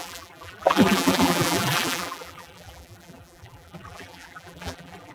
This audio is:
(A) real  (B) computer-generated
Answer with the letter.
B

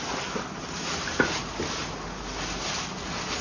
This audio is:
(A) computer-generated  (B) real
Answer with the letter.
B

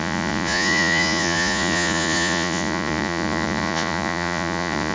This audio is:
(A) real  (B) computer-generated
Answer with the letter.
B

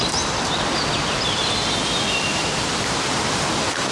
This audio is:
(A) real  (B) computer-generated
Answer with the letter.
A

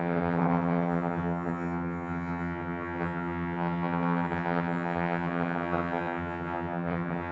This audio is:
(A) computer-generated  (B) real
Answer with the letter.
A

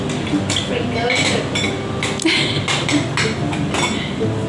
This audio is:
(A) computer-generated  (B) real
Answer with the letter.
B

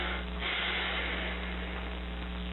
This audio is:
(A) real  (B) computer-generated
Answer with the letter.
A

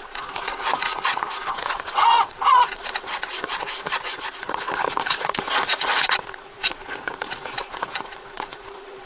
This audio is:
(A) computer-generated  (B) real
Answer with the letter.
A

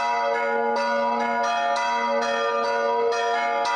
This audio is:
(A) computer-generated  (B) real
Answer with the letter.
B